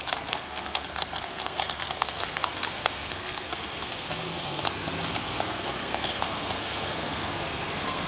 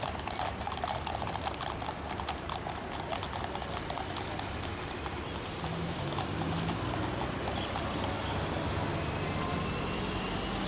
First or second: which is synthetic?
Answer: first